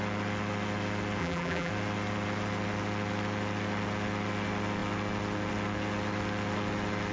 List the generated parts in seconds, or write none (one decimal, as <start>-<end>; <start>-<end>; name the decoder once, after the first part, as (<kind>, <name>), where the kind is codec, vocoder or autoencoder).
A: 1.2-1.7 (vocoder, BigVGAN v2)